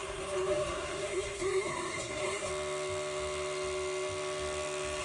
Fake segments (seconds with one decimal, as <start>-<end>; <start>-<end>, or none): 0.0-2.5